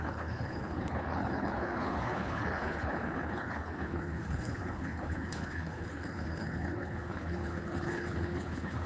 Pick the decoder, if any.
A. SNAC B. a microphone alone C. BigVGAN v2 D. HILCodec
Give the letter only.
D